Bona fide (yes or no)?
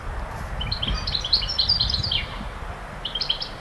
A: yes